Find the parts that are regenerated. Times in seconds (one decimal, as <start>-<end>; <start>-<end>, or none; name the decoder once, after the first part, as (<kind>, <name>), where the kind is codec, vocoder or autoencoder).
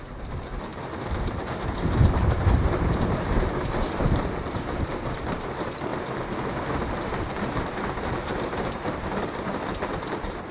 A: 0.0-5.9 (vocoder, BigVGAN v2); 7.1-10.5